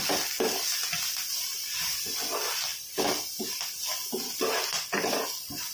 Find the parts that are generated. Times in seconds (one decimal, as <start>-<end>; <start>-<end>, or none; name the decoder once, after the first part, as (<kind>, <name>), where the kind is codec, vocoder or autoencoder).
none